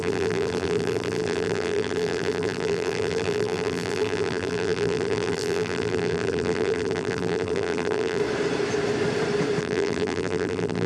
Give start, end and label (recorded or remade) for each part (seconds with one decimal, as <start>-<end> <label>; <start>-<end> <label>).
0.0-8.2 remade; 8.2-9.6 recorded; 9.6-10.9 remade

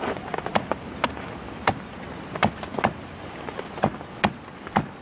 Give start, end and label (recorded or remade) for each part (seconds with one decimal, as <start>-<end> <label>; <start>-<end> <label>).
0.0-5.0 recorded

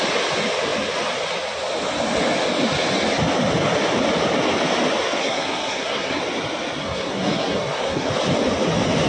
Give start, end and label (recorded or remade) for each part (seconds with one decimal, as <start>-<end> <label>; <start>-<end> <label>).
0.0-5.2 recorded; 5.2-6.2 remade; 6.2-6.8 recorded; 6.8-8.1 remade; 8.1-9.1 recorded